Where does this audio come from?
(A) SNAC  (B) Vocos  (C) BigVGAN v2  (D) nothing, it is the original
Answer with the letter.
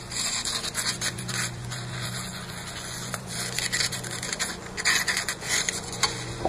B